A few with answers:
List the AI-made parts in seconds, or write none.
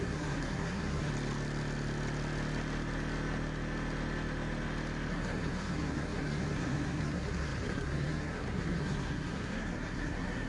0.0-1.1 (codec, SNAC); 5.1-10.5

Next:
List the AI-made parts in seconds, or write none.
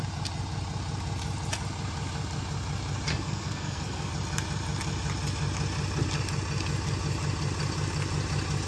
3.1-4.1 (codec, SNAC)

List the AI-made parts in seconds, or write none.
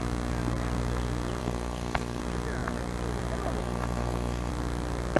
1.4-2.2 (codec, SNAC); 3.6-4.5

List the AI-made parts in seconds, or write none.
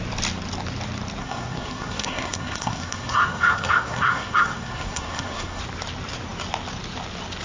1.2-5.6 (codec, SNAC)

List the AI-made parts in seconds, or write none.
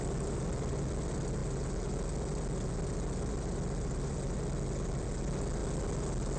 none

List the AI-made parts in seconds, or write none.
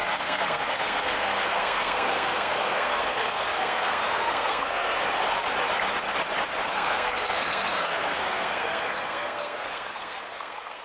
0.0-5.0 (codec, SNAC); 6.7-10.8